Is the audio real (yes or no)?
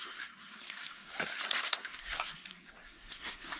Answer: no